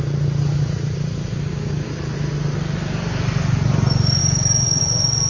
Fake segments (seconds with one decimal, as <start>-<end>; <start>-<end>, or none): 1.3-1.9; 4.2-4.8